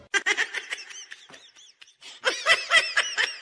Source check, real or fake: real